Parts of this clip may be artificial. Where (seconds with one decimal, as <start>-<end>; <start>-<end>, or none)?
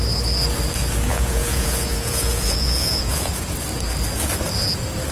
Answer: 1.1-3.3